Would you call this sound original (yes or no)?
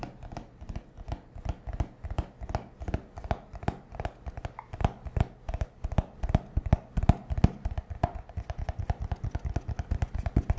yes